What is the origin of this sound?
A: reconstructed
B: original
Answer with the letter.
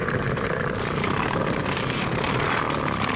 B